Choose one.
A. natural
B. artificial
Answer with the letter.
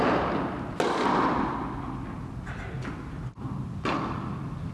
A